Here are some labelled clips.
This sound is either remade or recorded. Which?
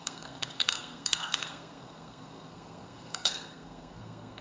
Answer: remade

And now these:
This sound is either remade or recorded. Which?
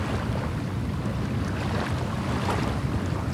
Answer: recorded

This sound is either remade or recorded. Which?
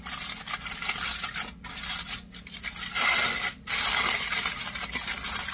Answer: recorded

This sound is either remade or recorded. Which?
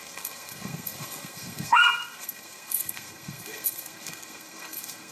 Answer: remade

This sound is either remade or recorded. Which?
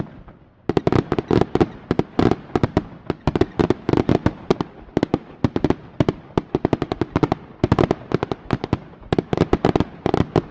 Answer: recorded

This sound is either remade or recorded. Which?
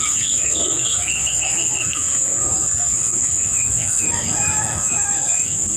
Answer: remade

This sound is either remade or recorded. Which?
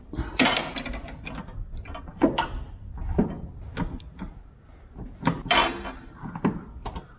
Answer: recorded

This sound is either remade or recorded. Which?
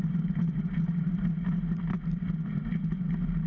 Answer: recorded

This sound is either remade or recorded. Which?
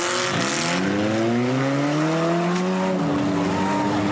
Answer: recorded